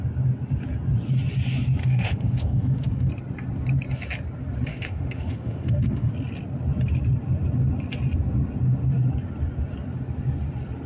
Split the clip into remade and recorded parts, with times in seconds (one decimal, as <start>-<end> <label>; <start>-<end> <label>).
0.0-1.8 recorded; 1.8-3.1 remade; 3.1-4.7 recorded; 4.7-6.1 remade; 6.1-10.9 recorded